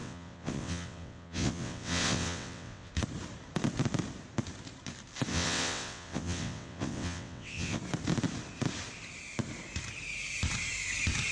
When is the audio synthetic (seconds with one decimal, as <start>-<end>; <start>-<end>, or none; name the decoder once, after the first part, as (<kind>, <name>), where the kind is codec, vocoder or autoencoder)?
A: 0.0-2.9 (vocoder, WaveNeXt); 5.3-7.8